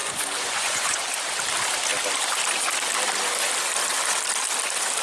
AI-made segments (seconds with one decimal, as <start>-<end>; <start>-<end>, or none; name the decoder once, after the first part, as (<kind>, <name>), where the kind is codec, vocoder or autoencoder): 0.0-1.1 (vocoder, Vocos)

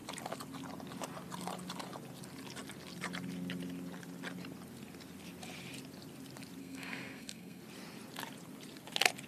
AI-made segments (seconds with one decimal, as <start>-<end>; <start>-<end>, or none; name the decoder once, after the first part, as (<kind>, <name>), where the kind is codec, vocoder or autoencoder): 6.6-7.6 (codec, SNAC)

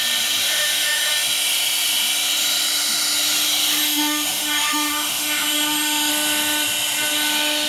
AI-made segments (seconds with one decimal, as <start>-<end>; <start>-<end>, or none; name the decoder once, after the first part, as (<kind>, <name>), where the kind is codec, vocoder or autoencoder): 0.4-1.1 (autoencoder, DAC-VAE); 3.8-6.1

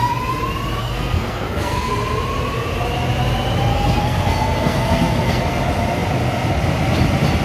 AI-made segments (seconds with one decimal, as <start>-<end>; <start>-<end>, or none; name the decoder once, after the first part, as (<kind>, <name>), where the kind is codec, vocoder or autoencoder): 0.8-1.9 (codec, SNAC); 3.7-5.6